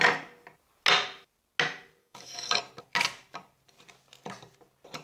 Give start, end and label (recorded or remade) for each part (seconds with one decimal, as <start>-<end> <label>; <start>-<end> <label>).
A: 0.0-2.0 recorded; 2.0-2.6 remade; 2.6-5.0 recorded